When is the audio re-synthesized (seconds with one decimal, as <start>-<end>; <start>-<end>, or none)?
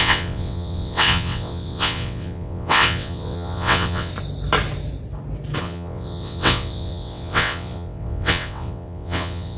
0.0-4.1; 5.6-9.6